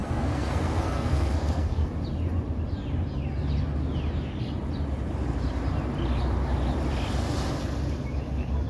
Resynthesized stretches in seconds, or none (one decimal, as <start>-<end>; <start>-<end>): 0.0-1.9